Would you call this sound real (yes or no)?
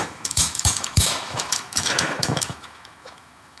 no